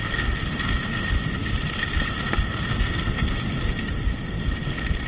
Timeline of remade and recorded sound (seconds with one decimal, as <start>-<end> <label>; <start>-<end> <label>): 0.0-5.1 recorded